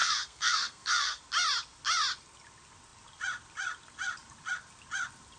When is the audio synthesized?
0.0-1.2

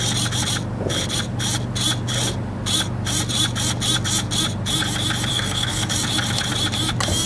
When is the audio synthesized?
5.3-5.9